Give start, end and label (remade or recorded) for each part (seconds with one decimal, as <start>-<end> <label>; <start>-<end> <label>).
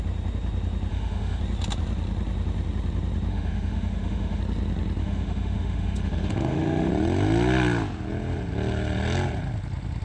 0.0-0.9 recorded; 0.9-1.4 remade; 1.4-3.3 recorded; 3.3-4.4 remade; 4.4-5.0 recorded; 5.0-6.9 remade; 6.9-10.0 recorded